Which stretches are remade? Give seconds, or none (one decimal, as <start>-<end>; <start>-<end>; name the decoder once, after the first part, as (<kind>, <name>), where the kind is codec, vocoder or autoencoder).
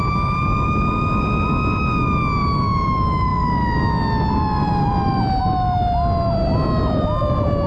none